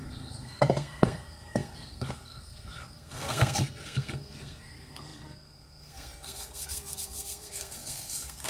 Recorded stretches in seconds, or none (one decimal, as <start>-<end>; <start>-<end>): none